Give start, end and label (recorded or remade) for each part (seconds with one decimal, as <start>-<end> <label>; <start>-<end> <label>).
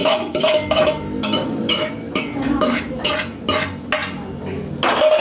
0.0-3.1 remade; 3.1-5.2 recorded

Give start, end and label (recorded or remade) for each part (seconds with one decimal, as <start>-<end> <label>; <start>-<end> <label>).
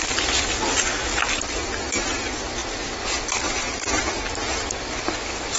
0.0-5.6 recorded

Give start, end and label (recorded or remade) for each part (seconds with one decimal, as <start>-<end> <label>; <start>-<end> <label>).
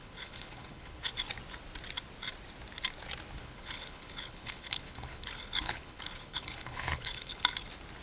0.0-1.1 remade; 1.1-3.4 recorded; 3.4-7.4 remade; 7.4-8.0 recorded